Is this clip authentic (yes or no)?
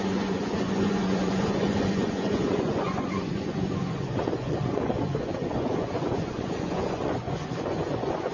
no